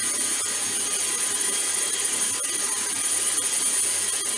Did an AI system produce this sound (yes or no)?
no